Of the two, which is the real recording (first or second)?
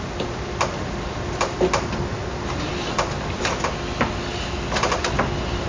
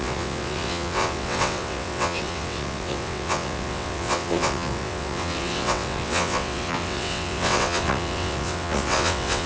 first